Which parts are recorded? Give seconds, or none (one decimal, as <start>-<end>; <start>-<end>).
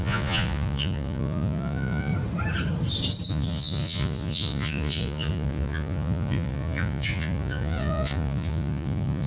2.1-3.3